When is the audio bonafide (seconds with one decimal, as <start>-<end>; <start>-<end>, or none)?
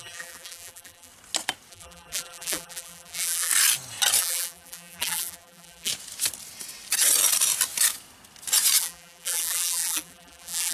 1.1-1.7; 3.5-4.2; 5.9-8.8